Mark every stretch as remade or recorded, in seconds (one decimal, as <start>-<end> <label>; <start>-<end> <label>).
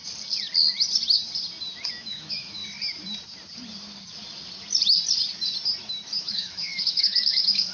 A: 0.0-1.9 recorded; 1.9-2.6 remade; 2.6-6.2 recorded; 6.2-7.7 remade